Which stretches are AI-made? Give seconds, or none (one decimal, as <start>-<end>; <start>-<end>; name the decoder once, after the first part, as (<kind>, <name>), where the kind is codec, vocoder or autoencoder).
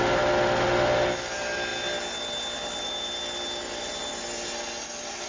none